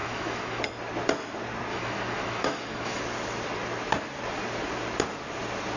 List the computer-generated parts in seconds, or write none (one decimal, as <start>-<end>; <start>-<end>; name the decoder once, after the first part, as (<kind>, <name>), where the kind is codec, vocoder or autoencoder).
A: 0.0-0.6 (autoencoder, DAC-VAE); 1.7-3.0